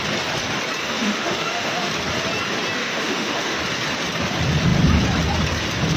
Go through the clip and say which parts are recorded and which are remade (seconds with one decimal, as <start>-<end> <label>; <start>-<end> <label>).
0.0-0.8 recorded; 0.8-1.9 remade; 1.9-2.8 recorded; 2.8-3.6 remade; 3.6-6.0 recorded

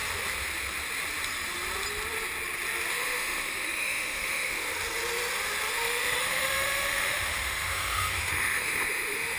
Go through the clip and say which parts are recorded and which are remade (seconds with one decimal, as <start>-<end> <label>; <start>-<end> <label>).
0.0-2.9 recorded; 2.9-4.7 remade; 4.7-5.7 recorded; 5.7-9.4 remade

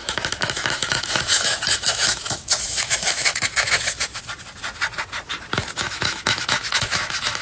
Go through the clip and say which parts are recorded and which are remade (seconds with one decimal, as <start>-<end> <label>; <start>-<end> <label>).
0.0-4.2 remade; 4.2-5.5 recorded; 5.5-7.4 remade